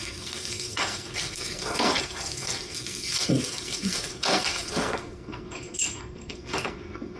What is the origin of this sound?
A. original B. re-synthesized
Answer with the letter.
B